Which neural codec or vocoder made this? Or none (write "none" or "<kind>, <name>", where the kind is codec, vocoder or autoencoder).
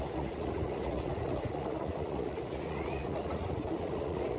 vocoder, Vocos